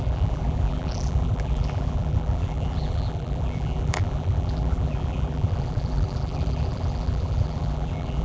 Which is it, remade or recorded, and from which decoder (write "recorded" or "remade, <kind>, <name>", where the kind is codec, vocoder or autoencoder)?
remade, vocoder, BigVGAN v2